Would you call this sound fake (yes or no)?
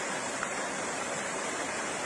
no